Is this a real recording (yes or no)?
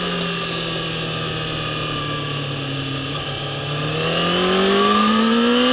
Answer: yes